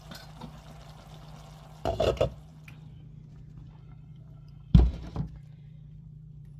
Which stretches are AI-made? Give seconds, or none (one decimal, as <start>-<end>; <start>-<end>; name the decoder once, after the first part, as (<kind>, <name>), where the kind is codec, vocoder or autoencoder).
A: 4.1-6.6 (vocoder, BigVGAN v2)